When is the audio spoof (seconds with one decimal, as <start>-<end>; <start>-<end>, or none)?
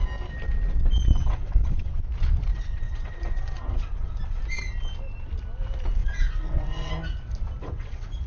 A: 1.2-2.0; 2.5-4.4; 6.0-6.9; 7.6-8.3